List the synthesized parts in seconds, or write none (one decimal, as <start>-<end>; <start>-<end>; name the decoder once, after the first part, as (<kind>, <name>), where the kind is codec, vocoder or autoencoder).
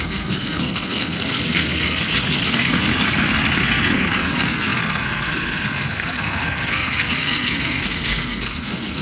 0.0-2.9 (codec, SNAC); 3.6-9.0